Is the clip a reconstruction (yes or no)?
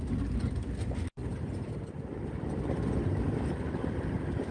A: no